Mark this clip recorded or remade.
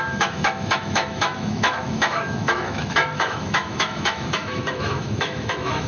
remade